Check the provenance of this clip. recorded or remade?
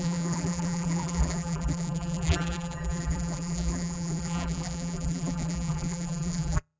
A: remade